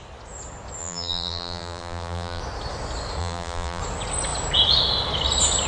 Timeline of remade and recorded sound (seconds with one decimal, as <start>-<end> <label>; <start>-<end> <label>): 0.0-0.8 recorded; 0.8-2.4 remade; 2.4-3.2 recorded; 3.2-3.8 remade; 3.8-5.7 recorded